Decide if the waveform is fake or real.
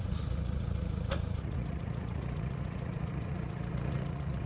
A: fake